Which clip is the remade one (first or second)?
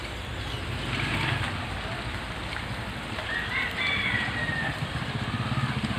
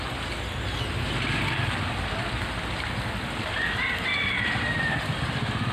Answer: first